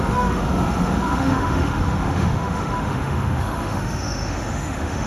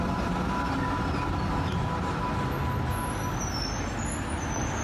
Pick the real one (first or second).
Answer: second